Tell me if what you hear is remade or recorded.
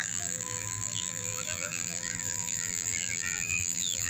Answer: remade